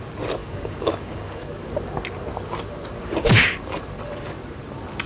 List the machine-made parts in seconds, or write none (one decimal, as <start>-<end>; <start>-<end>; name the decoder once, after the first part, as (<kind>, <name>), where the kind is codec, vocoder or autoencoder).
0.4-1.5 (codec, DAC); 3.0-3.8